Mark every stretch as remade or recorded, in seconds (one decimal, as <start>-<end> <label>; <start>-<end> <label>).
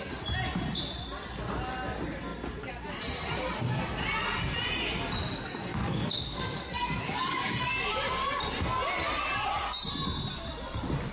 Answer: 0.0-5.7 recorded; 5.7-7.9 remade; 7.9-11.1 recorded